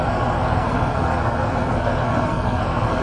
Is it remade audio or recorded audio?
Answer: remade